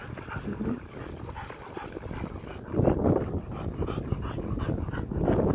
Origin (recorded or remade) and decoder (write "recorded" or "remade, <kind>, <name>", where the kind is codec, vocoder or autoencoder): recorded